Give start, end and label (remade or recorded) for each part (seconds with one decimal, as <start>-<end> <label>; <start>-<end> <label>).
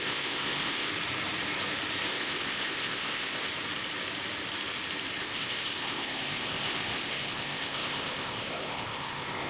0.0-0.9 remade; 0.9-2.1 recorded; 2.1-3.5 remade; 3.5-5.2 recorded; 5.2-9.5 remade